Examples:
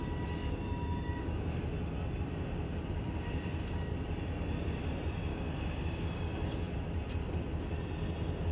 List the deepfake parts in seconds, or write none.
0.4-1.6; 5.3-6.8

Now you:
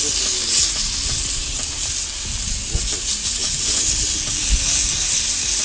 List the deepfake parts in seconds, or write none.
none

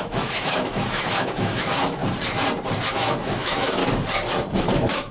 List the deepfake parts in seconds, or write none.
0.0-2.0; 2.9-3.8; 4.6-5.1

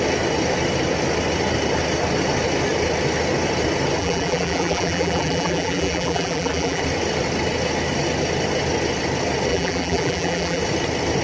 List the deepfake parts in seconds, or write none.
4.0-6.8; 9.5-10.6

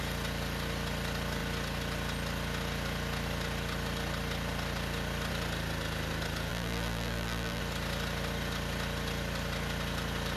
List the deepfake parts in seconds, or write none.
6.5-7.6